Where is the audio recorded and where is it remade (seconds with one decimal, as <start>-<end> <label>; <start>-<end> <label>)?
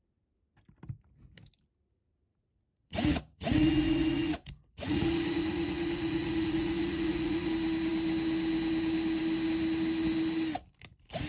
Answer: 0.0-2.3 recorded; 2.3-7.5 remade; 7.5-11.3 recorded